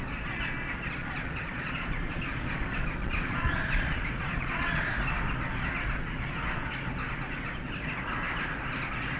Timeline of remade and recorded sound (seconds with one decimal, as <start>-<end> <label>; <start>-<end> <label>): 0.0-1.0 recorded; 1.0-2.2 remade; 2.2-3.0 recorded; 3.0-4.9 remade; 4.9-9.2 recorded